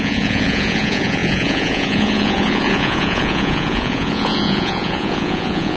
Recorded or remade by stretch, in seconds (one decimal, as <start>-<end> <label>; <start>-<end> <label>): 0.0-5.8 remade